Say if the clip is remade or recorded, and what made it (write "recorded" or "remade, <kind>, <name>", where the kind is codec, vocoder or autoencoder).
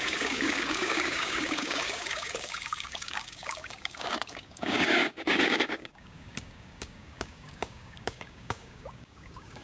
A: remade, codec, DAC